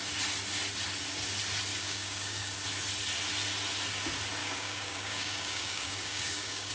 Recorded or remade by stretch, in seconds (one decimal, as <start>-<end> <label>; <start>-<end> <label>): 0.0-1.7 recorded; 1.7-2.5 remade; 2.5-4.4 recorded; 4.4-6.7 remade